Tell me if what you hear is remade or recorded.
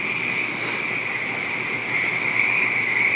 recorded